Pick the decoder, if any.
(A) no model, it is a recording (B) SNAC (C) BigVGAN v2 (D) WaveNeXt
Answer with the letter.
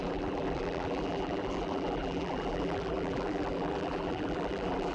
C